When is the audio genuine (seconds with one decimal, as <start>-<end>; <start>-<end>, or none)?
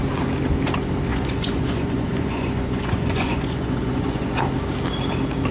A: 0.0-1.1; 4.4-5.5